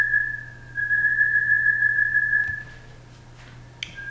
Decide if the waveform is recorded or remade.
recorded